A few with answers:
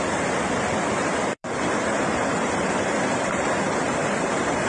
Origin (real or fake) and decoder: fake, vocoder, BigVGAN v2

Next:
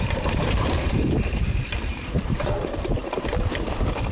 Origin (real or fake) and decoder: fake, vocoder, BigVGAN v2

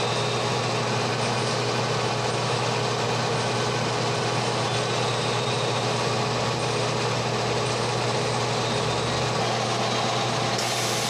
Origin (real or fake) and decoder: real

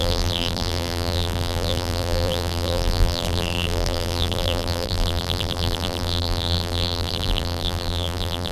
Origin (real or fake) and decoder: fake, vocoder, BigVGAN v2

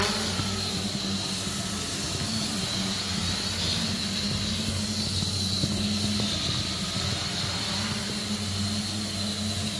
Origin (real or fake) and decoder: real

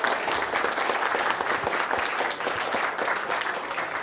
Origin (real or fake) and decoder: real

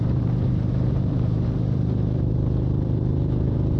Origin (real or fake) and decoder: fake, vocoder, BigVGAN v2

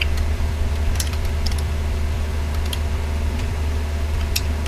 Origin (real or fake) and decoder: fake, vocoder, BigVGAN v2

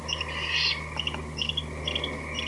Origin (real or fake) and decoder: real